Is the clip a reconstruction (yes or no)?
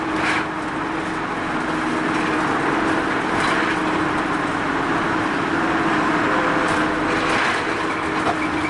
no